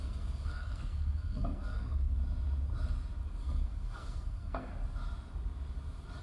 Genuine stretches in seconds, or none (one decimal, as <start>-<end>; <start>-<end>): 2.2-3.4; 4.7-6.2